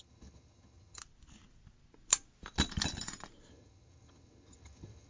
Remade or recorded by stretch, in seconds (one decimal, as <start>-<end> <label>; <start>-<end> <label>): 0.0-1.0 remade; 1.0-3.5 recorded; 3.5-5.1 remade